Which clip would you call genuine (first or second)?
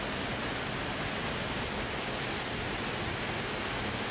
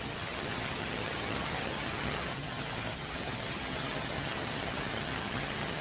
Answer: first